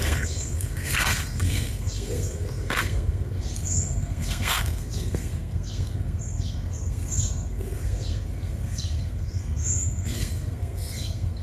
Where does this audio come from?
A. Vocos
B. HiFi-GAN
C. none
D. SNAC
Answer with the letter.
D